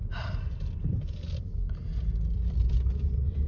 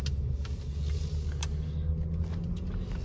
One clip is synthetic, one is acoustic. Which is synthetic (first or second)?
first